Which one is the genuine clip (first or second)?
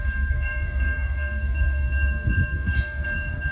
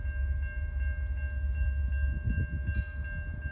second